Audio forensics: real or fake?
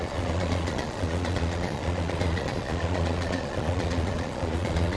fake